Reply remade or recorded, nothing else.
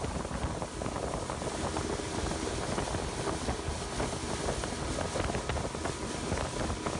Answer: recorded